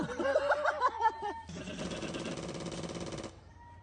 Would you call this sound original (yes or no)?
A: yes